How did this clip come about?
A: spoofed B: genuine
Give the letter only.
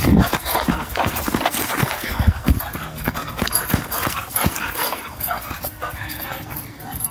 A